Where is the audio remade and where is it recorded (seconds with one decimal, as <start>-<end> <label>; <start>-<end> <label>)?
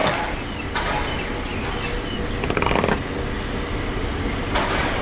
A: 0.0-0.8 remade; 0.8-5.0 recorded